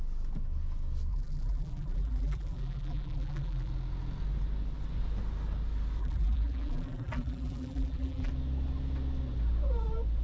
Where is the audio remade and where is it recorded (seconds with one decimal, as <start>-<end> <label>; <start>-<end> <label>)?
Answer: 0.0-1.1 recorded; 1.1-3.7 remade; 3.7-6.0 recorded; 6.0-8.3 remade; 8.3-10.2 recorded